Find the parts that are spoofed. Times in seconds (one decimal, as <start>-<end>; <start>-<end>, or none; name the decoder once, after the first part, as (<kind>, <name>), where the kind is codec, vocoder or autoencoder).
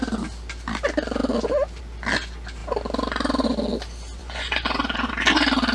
4.2-5.1 (vocoder, Vocos)